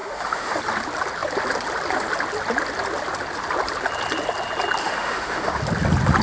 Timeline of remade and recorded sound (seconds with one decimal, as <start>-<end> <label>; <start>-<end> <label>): 0.0-0.6 remade; 0.6-4.8 recorded; 4.8-5.6 remade; 5.6-6.2 recorded